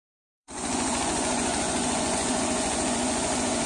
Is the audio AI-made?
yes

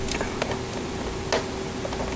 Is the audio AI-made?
no